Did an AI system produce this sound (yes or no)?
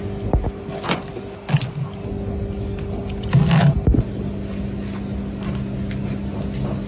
no